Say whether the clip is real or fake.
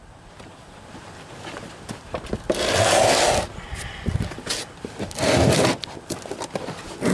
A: real